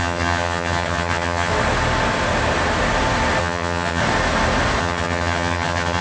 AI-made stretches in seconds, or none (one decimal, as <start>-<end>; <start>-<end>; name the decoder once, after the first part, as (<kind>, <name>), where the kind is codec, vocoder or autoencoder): 0.0-1.5 (vocoder, HiFi-GAN); 3.4-4.0; 4.8-6.0